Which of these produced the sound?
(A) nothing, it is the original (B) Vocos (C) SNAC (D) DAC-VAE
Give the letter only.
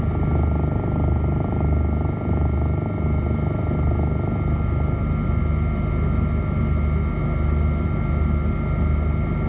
A